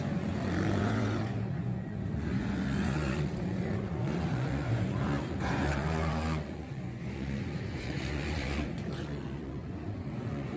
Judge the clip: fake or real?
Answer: fake